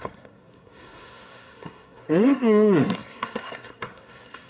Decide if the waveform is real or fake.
fake